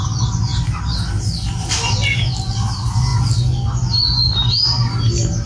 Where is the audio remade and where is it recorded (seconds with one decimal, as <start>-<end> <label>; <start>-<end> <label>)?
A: 0.0-5.5 recorded